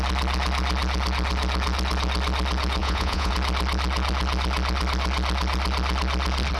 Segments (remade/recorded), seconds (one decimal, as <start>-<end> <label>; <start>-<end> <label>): 0.0-2.8 recorded; 2.8-3.3 remade; 3.3-6.6 recorded